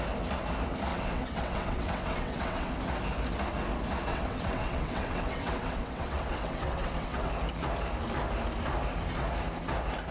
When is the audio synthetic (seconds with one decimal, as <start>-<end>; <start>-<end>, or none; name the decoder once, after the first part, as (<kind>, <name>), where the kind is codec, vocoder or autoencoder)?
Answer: 0.9-2.7 (vocoder, WaveNeXt); 4.1-7.3